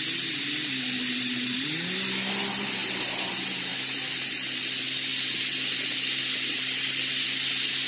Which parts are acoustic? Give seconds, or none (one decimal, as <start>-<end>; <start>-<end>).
0.0-7.9